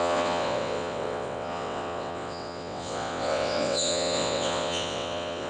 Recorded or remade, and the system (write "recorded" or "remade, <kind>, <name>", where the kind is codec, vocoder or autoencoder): remade, vocoder, WaveNeXt